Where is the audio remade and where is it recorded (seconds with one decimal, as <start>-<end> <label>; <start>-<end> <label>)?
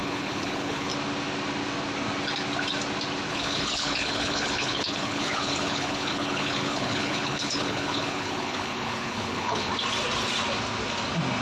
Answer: 0.0-0.9 remade; 0.9-3.3 recorded; 3.3-9.7 remade; 9.7-11.4 recorded